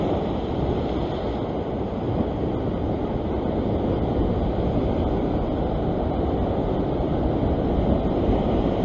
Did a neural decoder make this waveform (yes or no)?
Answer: no